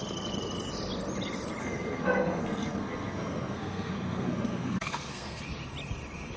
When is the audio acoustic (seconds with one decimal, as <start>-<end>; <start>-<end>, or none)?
0.0-1.6; 5.4-6.4